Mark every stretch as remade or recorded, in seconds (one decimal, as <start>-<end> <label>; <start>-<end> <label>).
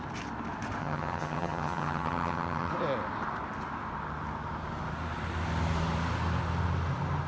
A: 0.0-0.8 recorded; 0.8-2.7 remade; 2.7-7.3 recorded